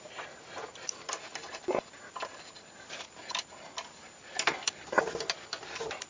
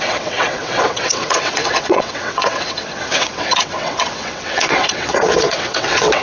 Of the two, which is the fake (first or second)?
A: second